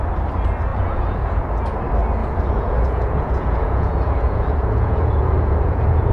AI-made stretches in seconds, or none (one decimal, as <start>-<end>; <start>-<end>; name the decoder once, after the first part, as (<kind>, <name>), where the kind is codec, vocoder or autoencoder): 0.7-1.4 (vocoder, Vocos); 2.2-6.1

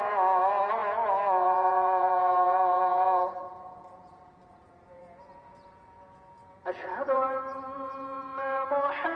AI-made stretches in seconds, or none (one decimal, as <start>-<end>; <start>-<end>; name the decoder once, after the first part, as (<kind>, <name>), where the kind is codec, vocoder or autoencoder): 0.0-9.2 (vocoder, Vocos)

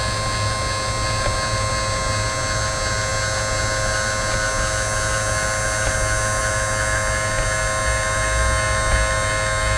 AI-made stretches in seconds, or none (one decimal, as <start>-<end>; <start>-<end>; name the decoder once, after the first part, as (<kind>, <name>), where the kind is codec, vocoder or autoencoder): none

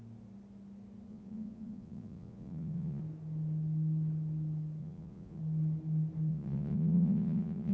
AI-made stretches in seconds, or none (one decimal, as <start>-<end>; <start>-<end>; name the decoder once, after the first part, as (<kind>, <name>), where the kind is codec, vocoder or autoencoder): 1.1-3.0 (vocoder, Vocos); 4.8-5.4; 6.3-7.7

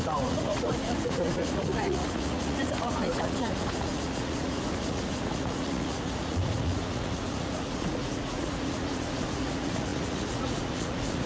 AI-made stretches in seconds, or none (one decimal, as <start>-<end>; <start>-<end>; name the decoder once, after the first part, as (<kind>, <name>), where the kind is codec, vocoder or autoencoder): 0.0-11.3 (vocoder, Vocos)

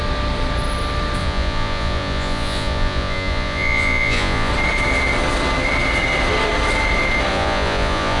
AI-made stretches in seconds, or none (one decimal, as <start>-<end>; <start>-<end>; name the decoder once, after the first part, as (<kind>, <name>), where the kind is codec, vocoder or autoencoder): 1.2-4.5 (vocoder, Vocos); 7.3-8.2

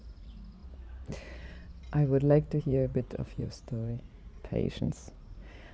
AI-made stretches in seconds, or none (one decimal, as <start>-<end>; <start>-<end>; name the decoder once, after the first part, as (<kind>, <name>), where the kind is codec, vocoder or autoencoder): 0.0-0.6 (vocoder, Vocos); 2.6-5.7